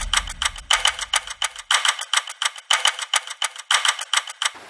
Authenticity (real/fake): real